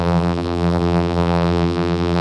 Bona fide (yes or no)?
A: no